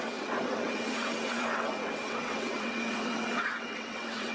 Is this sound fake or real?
fake